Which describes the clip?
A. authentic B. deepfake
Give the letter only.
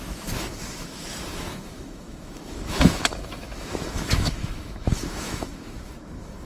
B